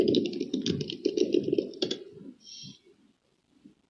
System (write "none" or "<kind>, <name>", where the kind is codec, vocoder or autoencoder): none